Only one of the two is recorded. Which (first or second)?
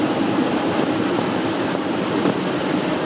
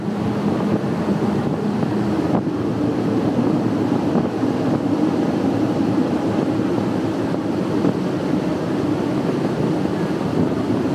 second